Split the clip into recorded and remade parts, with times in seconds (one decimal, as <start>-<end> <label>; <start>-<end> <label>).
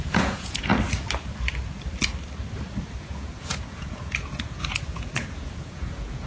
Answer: 0.0-0.7 remade; 0.7-3.0 recorded; 3.0-6.3 remade